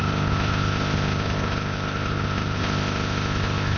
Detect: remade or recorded remade